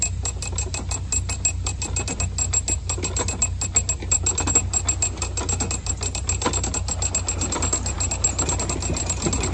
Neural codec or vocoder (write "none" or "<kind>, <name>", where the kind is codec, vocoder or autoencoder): none